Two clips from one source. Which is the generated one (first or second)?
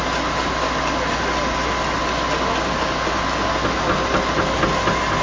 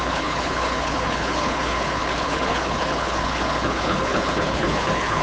second